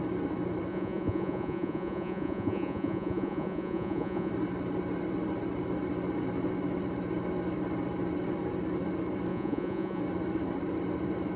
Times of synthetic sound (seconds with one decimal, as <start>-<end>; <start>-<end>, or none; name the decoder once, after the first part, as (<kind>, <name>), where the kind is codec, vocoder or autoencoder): 0.7-4.3 (vocoder, Vocos); 9.3-10.0